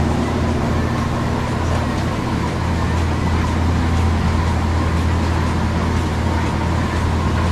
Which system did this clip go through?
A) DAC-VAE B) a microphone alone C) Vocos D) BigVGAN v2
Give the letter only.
B